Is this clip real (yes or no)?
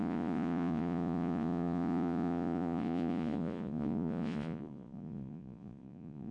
no